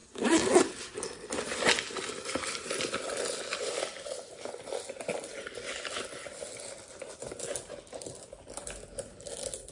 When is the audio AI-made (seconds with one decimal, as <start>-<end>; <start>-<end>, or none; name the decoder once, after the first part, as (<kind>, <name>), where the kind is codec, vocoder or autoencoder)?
none